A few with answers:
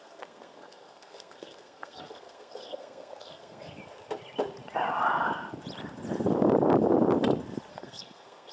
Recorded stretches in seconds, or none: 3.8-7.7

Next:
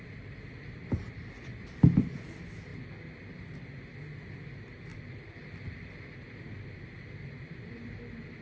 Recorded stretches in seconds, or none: 0.0-4.9; 6.8-8.4

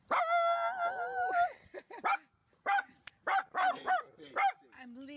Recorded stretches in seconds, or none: 0.0-2.4; 3.9-5.2

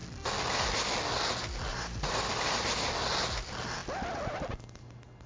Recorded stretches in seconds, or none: 0.0-1.7; 2.9-5.3

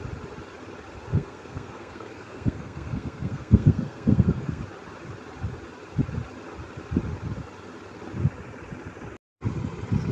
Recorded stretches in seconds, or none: 0.0-1.1; 4.6-10.1